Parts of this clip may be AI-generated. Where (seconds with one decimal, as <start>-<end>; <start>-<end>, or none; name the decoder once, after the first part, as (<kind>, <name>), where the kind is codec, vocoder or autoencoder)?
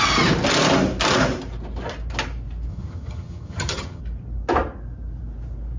2.7-4.0 (vocoder, HiFi-GAN)